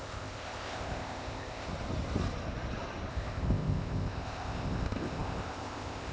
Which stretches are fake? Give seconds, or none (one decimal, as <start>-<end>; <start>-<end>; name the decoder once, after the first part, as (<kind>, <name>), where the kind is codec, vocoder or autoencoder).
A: 0.0-1.7 (codec, ZipCodec); 3.1-6.1